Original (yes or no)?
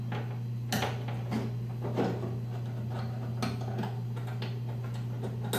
yes